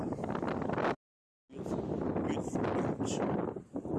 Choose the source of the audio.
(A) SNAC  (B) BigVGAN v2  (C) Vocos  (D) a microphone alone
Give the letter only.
D